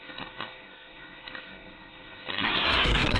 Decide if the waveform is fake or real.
fake